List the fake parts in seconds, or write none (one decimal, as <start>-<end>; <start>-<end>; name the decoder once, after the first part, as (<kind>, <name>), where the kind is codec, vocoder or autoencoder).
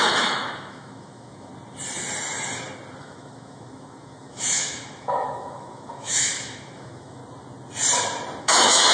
0.0-1.5 (autoencoder, DAC-VAE); 3.0-7.2; 8.4-8.9